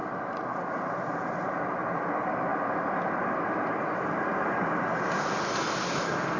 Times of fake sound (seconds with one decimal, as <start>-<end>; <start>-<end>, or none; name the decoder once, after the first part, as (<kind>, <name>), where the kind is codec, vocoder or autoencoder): none